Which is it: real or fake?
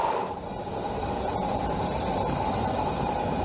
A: fake